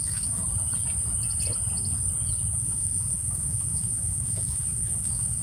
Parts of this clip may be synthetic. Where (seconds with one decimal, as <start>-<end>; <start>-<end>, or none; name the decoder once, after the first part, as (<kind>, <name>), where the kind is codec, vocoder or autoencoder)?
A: 0.0-0.4 (autoencoder, DAC-VAE); 2.6-5.4